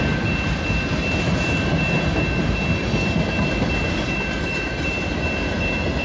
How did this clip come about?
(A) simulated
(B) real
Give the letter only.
B